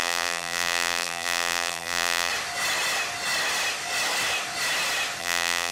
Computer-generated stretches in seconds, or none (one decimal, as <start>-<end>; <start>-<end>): 0.0-2.3; 5.2-5.7